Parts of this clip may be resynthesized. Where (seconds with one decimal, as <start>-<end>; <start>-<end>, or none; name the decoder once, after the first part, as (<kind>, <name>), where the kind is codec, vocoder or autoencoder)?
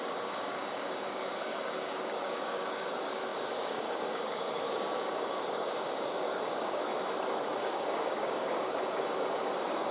0.0-6.9 (codec, DAC); 7.5-9.9